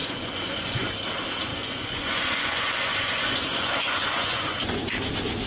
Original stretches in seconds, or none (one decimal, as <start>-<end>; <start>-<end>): 0.9-1.5; 4.8-5.5